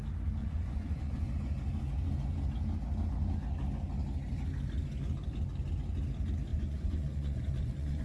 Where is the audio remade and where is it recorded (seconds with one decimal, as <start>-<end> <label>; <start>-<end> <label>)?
0.0-0.4 recorded; 0.4-1.3 remade; 1.3-6.5 recorded; 6.5-8.0 remade